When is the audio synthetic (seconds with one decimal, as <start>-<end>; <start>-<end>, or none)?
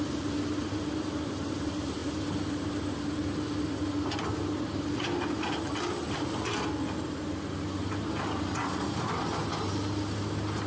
none